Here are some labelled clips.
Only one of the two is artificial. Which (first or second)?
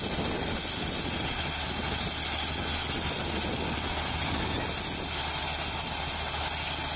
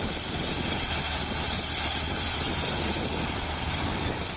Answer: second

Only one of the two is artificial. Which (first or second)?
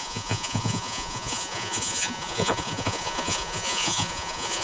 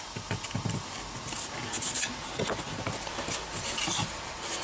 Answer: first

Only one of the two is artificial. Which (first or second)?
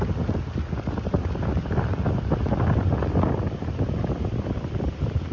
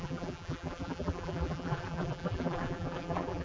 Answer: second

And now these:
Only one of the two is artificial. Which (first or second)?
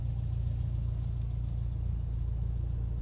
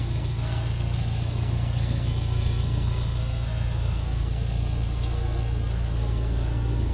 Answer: second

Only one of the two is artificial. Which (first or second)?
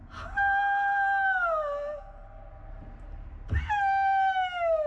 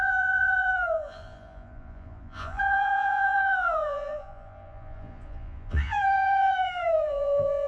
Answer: second